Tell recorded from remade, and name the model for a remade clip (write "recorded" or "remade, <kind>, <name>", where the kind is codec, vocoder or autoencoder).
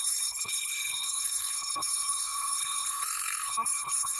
remade, codec, HILCodec